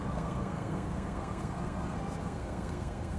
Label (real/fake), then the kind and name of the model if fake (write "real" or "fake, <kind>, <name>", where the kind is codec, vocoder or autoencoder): fake, codec, SNAC